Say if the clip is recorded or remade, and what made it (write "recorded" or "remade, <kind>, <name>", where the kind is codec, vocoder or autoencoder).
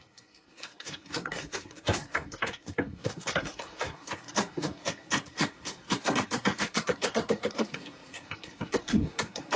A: remade, codec, SNAC